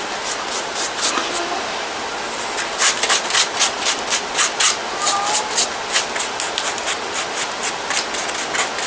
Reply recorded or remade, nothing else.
recorded